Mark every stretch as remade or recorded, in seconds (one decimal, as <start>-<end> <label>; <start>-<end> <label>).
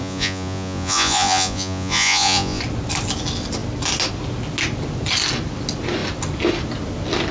0.0-2.6 remade; 2.6-7.3 recorded